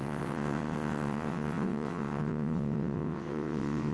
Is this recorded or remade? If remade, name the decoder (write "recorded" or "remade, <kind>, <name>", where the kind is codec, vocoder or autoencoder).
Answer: remade, vocoder, WaveNeXt